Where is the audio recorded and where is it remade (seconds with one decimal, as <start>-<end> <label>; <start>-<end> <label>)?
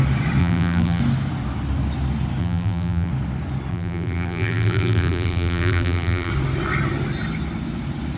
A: 0.0-0.4 recorded; 0.4-1.0 remade; 1.0-2.4 recorded; 2.4-3.1 remade; 3.1-3.7 recorded; 3.7-6.3 remade; 6.3-8.2 recorded